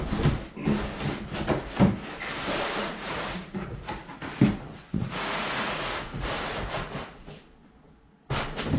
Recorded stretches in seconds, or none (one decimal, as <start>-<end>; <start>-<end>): 0.0-2.8; 4.1-4.9; 7.3-8.8